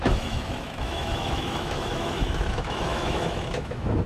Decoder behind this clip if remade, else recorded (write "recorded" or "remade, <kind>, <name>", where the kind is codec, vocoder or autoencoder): remade, autoencoder, DAC-VAE